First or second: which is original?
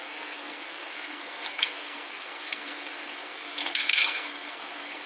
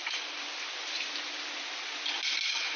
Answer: second